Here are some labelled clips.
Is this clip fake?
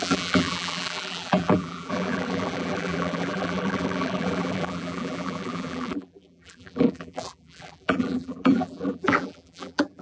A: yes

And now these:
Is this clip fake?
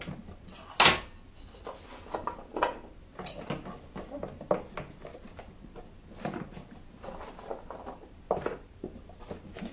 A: no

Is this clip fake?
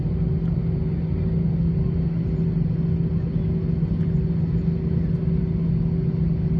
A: no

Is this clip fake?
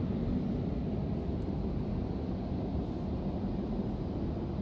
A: no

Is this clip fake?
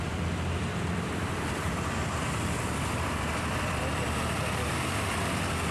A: yes